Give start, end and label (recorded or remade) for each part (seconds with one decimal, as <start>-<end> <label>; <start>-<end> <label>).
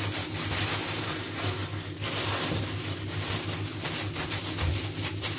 0.0-5.4 recorded